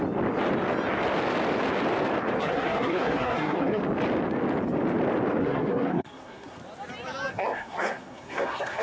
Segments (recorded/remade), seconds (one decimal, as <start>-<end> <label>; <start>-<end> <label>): 0.0-2.4 recorded; 2.4-3.8 remade; 3.8-5.4 recorded; 5.4-6.6 remade; 6.6-7.3 recorded; 7.3-8.8 remade